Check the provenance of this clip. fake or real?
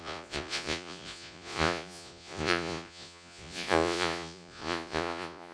fake